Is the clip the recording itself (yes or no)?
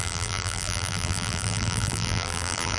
no